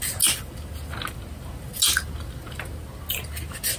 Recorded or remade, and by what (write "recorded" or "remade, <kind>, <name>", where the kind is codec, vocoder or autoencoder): recorded